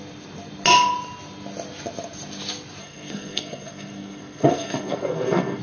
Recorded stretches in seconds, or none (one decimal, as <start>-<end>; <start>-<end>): 0.0-2.8